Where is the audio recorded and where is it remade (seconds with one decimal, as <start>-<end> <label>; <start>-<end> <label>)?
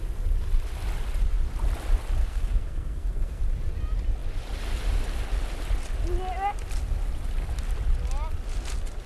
0.0-2.2 recorded; 2.2-3.4 remade; 3.4-9.1 recorded